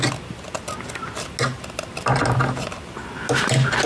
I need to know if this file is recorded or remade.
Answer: recorded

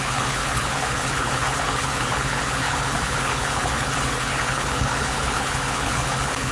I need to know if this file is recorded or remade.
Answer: remade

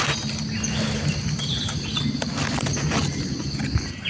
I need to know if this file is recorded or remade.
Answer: recorded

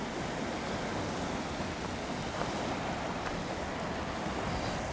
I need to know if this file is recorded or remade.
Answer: recorded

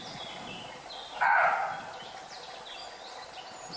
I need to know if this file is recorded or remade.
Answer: recorded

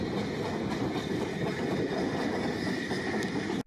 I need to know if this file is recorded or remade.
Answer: recorded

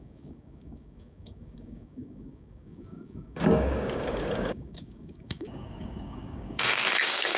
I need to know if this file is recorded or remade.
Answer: remade